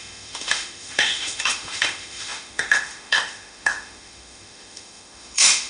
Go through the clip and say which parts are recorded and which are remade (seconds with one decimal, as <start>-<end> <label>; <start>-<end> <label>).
0.0-5.7 remade